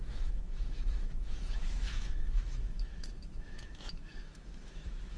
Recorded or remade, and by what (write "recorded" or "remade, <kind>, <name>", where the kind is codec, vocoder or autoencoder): remade, autoencoder, DAC-VAE